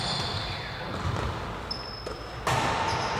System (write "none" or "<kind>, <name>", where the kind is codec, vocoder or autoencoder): none